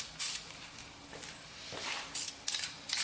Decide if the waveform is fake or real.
real